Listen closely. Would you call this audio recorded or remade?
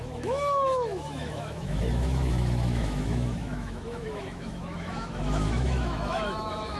remade